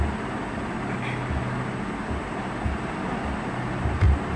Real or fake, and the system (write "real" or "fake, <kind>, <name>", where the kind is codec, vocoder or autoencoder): real